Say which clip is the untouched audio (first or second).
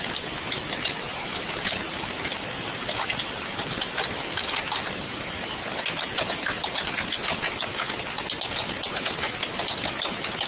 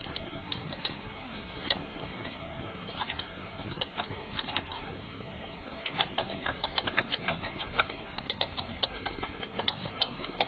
first